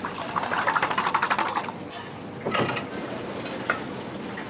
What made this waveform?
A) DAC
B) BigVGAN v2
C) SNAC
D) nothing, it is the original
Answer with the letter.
D